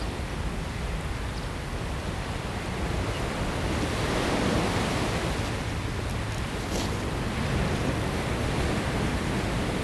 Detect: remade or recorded recorded